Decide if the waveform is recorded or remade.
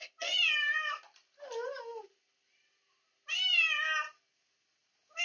recorded